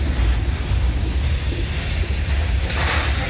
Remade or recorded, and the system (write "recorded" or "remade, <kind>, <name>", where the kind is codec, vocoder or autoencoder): recorded